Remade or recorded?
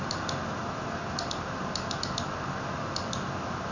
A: recorded